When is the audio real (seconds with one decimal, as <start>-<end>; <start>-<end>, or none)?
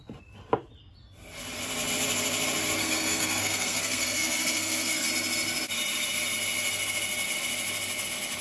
0.0-2.8; 5.1-8.4